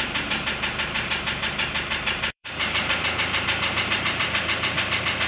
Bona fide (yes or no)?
no